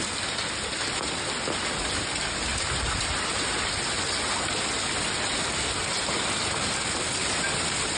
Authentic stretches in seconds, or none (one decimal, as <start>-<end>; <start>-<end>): 0.0-8.0